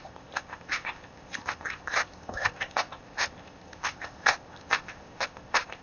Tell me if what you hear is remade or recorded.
remade